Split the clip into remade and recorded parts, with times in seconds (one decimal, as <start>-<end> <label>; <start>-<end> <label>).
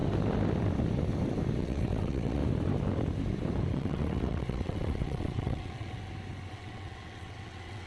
0.0-1.6 recorded; 1.6-2.4 remade; 2.4-3.7 recorded; 3.7-6.0 remade; 6.0-6.5 recorded; 6.5-7.9 remade